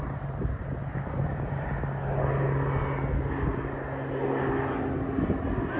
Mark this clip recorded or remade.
recorded